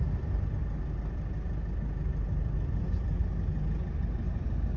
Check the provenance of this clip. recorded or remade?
recorded